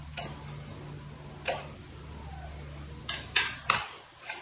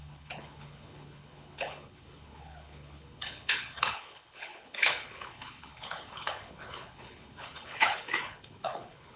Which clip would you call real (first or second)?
first